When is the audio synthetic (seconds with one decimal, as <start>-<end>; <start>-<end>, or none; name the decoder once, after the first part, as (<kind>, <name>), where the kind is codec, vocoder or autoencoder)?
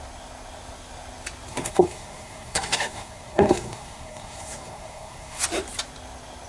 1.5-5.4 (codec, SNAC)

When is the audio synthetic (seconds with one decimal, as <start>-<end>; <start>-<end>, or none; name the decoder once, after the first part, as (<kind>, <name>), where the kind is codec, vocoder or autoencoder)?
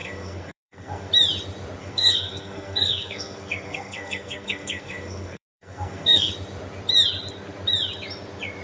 0.0-1.1 (codec, SNAC); 1.8-6.3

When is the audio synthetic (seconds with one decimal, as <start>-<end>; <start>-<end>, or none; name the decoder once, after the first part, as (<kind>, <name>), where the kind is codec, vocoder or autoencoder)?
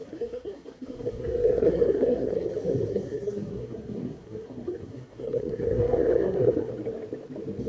0.0-2.5 (codec, SNAC); 2.9-6.7